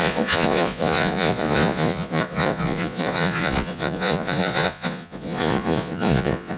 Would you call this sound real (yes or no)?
no